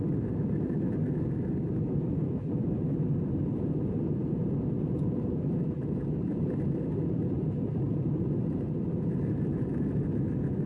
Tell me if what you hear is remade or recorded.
remade